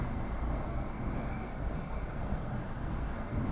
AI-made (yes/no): yes